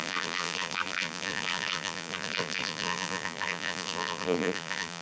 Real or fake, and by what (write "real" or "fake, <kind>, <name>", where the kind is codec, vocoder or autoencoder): fake, vocoder, BigVGAN v2